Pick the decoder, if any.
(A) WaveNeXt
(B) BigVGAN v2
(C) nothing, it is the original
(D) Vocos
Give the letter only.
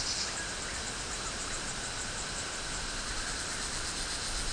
C